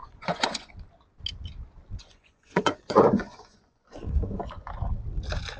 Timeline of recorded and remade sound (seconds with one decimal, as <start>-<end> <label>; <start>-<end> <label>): 0.0-0.7 remade; 0.7-2.0 recorded; 2.0-4.4 remade; 4.4-5.6 recorded